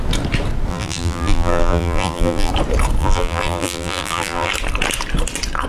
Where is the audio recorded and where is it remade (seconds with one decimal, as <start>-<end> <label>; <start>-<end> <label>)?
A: 0.0-0.7 recorded; 0.7-2.5 remade; 2.5-3.0 recorded; 3.0-4.5 remade; 4.5-5.7 recorded